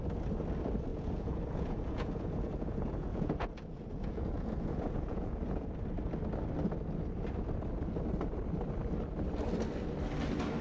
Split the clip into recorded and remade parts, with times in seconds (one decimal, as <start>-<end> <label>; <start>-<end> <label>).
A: 0.0-0.9 recorded; 0.9-5.7 remade; 5.7-10.6 recorded